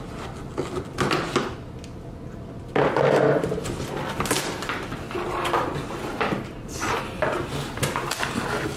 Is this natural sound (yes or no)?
yes